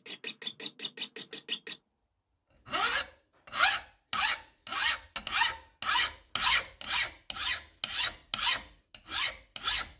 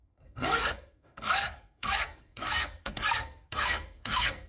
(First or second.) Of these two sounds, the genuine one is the first